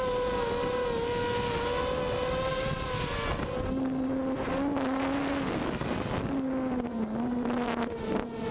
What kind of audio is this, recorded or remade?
recorded